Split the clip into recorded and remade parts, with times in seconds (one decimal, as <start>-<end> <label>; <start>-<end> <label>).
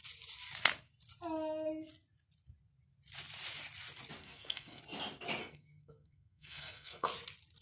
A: 0.0-4.2 recorded; 4.2-4.8 remade; 4.8-5.4 recorded; 5.4-7.1 remade; 7.1-7.6 recorded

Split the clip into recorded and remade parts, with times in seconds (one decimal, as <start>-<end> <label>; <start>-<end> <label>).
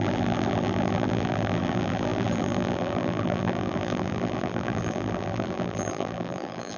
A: 0.0-6.8 remade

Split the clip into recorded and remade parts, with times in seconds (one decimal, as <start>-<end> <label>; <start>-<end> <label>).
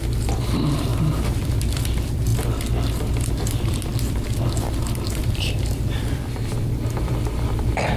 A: 0.0-2.3 remade; 2.3-3.3 recorded; 3.3-3.9 remade; 3.9-5.2 recorded; 5.2-8.0 remade